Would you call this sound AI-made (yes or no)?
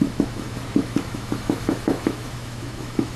yes